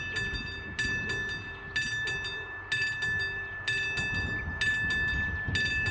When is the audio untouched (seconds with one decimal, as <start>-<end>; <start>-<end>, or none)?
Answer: 0.0-5.9